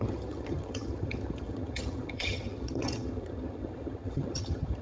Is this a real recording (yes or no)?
no